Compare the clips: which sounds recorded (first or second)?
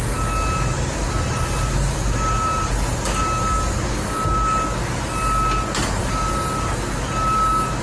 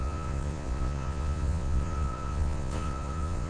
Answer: first